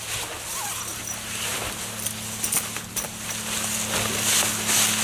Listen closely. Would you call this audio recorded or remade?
recorded